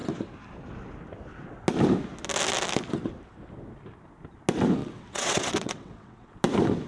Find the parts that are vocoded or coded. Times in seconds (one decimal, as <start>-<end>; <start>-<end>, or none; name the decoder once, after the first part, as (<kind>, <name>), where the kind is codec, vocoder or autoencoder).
4.8-6.3 (vocoder, WaveNeXt)